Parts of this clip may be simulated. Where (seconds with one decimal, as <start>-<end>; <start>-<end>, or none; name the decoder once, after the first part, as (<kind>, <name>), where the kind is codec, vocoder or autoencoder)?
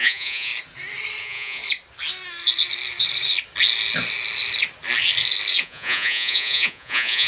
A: 0.0-0.5 (vocoder, Vocos); 1.2-1.6; 5.6-7.3